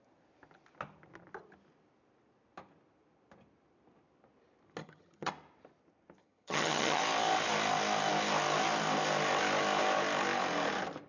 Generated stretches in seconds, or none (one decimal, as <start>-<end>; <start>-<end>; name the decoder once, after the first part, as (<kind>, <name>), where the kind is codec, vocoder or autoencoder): 4.8-5.3 (vocoder, HiFi-GAN); 6.2-7.0